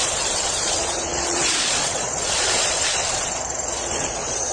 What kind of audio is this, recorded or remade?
remade